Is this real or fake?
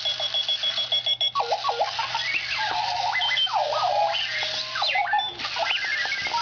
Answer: real